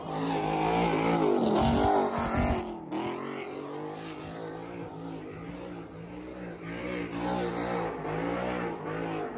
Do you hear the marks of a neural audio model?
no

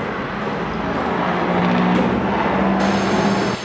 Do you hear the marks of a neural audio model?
no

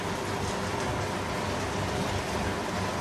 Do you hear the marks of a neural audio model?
no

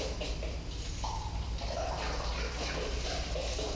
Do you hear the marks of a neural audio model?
no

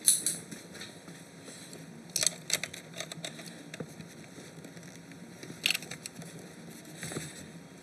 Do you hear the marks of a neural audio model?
no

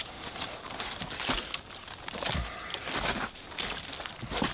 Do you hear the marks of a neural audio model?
no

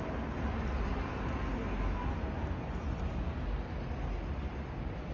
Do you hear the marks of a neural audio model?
no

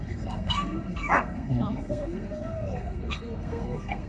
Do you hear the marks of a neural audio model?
yes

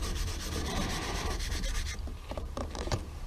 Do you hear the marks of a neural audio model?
yes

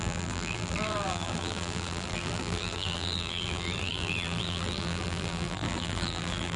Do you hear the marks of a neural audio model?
yes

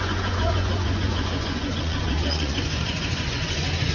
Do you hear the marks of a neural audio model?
yes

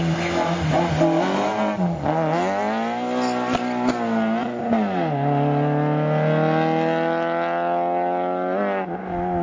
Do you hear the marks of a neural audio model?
no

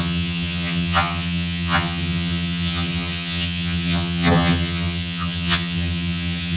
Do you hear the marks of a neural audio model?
yes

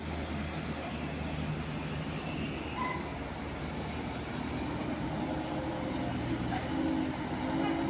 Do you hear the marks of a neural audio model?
no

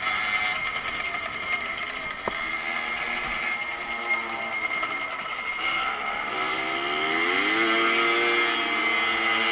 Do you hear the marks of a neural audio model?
no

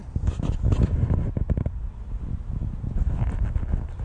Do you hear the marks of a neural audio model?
no